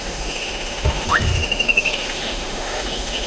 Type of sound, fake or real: fake